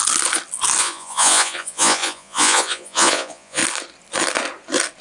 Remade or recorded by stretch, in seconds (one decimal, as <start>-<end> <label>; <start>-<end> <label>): 0.0-0.8 recorded; 0.8-3.6 remade; 3.6-5.0 recorded